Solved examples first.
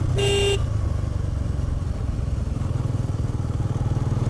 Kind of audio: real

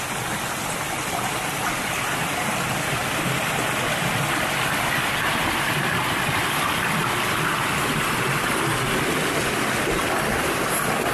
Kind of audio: real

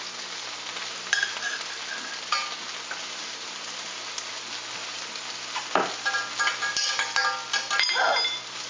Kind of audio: real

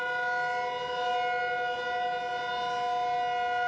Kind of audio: real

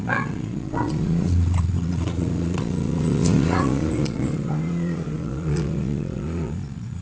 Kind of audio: fake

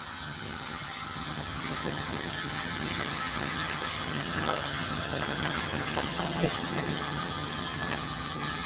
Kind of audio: fake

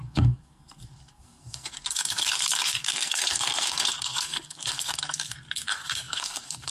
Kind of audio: fake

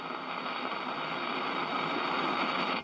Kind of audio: real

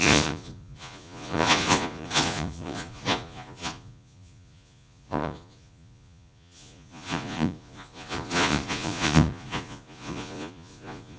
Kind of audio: fake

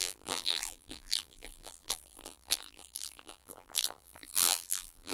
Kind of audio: fake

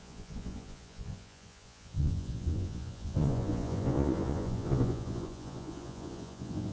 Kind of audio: fake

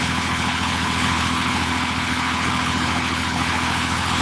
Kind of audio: fake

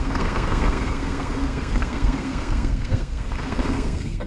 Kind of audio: fake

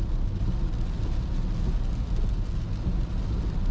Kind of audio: real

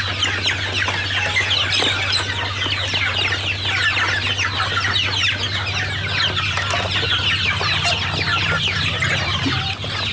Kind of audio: real